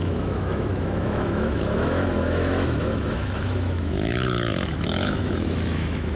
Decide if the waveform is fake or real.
fake